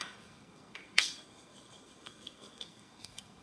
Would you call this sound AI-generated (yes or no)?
yes